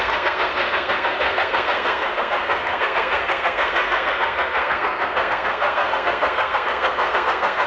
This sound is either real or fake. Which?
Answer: fake